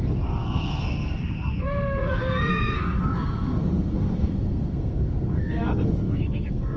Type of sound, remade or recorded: remade